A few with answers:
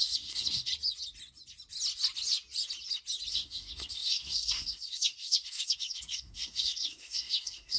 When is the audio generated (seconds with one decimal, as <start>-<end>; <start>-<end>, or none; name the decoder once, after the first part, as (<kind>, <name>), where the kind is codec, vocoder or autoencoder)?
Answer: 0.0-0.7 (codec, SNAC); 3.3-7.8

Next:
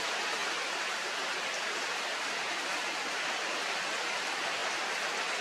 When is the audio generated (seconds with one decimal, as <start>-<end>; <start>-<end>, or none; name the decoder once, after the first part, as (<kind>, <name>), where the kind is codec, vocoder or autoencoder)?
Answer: 0.4-2.7 (vocoder, BigVGAN v2)

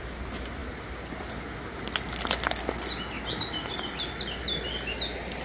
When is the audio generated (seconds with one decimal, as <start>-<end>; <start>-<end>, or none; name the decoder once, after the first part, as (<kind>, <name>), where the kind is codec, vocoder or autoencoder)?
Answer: none

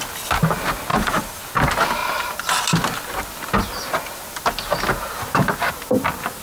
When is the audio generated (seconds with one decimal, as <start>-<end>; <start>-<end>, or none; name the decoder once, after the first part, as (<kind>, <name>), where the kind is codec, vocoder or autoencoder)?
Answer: 0.9-1.4 (vocoder, BigVGAN v2)

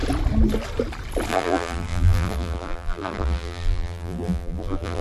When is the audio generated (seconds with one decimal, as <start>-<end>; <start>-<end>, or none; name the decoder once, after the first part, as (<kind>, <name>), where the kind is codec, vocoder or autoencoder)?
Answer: 1.3-5.0 (vocoder, BigVGAN v2)